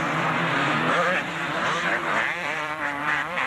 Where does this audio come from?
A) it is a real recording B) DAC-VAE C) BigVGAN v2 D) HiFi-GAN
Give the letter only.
C